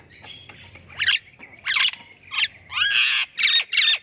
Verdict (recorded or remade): recorded